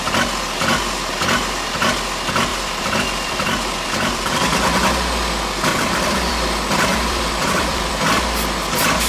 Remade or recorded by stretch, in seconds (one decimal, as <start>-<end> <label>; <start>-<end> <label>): 0.0-2.5 recorded; 2.5-4.4 remade; 4.4-5.7 recorded; 5.7-6.3 remade; 6.3-6.9 recorded; 6.9-7.9 remade; 7.9-9.1 recorded